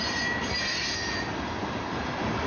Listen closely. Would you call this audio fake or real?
real